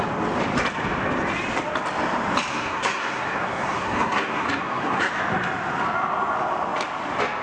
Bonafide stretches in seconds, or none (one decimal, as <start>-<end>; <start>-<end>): 0.0-2.5; 5.1-7.4